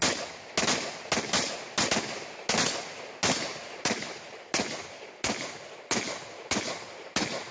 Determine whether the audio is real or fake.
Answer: real